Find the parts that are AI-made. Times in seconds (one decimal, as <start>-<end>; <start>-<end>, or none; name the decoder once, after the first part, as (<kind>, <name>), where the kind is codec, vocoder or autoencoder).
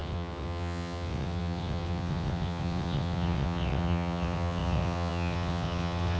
0.0-6.2 (vocoder, WaveNeXt)